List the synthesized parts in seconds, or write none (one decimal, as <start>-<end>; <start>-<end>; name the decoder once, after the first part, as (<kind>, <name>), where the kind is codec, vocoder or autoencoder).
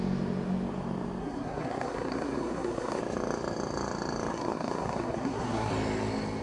1.2-3.0 (codec, SNAC); 4.3-5.7